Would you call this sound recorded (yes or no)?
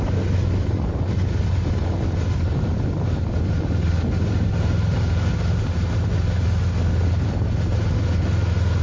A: yes